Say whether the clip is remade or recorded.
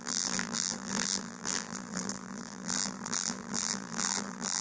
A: remade